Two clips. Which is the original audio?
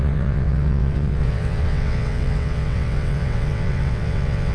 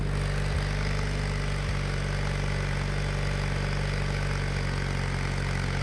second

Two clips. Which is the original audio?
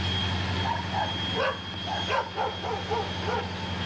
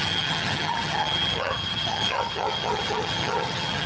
first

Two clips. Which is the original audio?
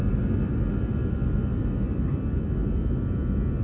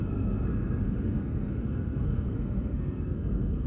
first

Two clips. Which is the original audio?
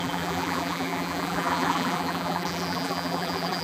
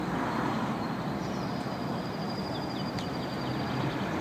second